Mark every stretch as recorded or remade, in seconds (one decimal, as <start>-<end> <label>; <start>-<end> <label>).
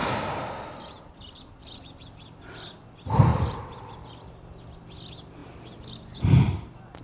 0.0-2.5 remade; 2.5-3.3 recorded; 3.3-3.9 remade; 3.9-5.4 recorded; 5.4-6.5 remade; 6.5-7.0 recorded